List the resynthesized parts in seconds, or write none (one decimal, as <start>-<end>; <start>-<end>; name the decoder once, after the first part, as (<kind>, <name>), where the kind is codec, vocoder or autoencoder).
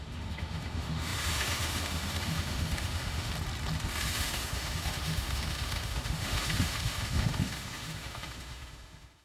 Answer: 0.0-3.3 (autoencoder, DAC-VAE); 3.8-9.2